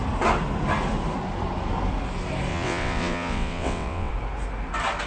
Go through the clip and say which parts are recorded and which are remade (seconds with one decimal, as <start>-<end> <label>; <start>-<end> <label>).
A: 0.0-2.5 recorded; 2.5-4.1 remade; 4.1-5.1 recorded